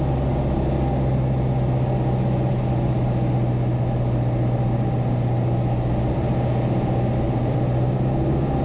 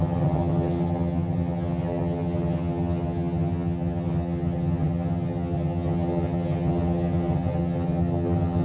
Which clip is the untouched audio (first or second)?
first